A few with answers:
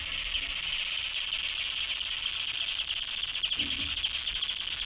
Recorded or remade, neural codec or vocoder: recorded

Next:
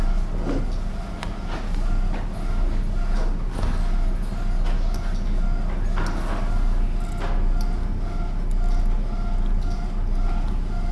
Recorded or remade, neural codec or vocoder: recorded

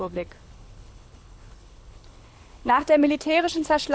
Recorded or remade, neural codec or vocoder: remade, codec, HILCodec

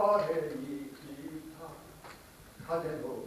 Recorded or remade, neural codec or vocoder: recorded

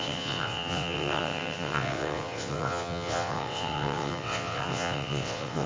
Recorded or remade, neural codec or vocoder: remade, vocoder, WaveNeXt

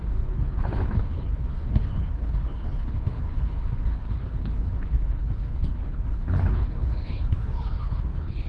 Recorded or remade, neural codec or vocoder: remade, codec, HILCodec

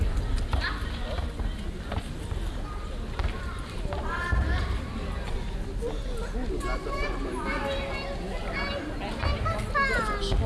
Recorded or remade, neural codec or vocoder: recorded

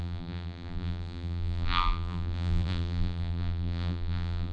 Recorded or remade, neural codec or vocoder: remade, vocoder, BigVGAN v2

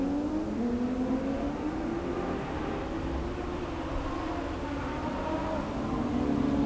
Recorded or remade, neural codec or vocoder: recorded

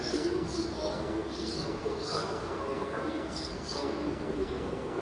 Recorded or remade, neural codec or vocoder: remade, codec, SNAC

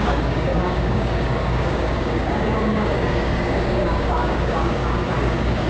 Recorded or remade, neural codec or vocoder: remade, codec, DAC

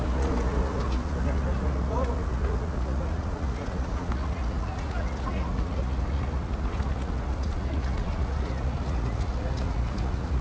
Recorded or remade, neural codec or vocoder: remade, vocoder, Vocos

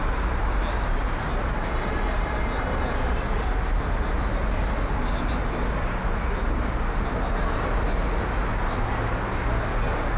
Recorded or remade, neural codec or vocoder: recorded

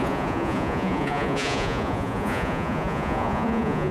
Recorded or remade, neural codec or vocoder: remade, vocoder, Vocos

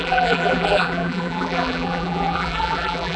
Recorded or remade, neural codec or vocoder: remade, vocoder, BigVGAN v2